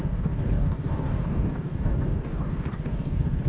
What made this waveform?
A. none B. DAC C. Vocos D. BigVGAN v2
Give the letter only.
B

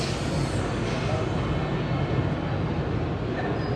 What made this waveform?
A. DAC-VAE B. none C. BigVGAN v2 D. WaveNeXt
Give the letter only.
B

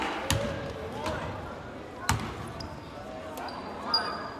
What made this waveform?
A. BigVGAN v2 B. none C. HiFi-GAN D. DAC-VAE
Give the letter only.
B